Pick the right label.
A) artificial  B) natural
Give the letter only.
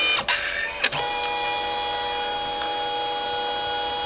B